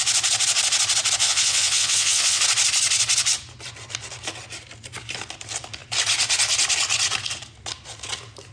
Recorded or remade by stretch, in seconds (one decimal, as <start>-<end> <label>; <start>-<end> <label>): 0.0-1.2 recorded; 1.2-2.4 remade; 2.4-8.5 recorded